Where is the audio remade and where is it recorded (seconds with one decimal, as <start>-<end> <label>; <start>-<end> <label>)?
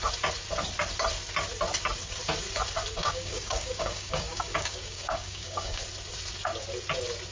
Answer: 0.0-3.0 recorded; 3.0-5.8 remade; 5.8-7.3 recorded